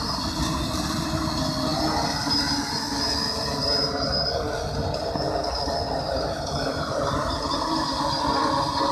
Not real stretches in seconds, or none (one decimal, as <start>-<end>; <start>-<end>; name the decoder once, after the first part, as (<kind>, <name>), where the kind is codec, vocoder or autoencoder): none